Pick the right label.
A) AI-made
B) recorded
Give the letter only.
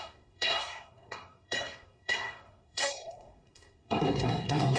A